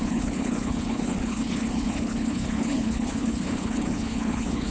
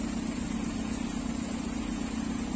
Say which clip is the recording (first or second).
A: second